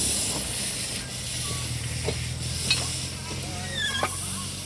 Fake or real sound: real